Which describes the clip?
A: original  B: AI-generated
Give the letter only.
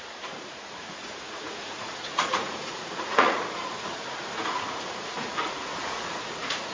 B